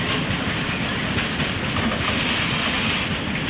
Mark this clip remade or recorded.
recorded